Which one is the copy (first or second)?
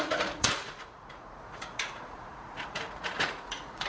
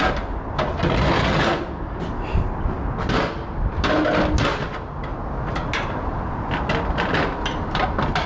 first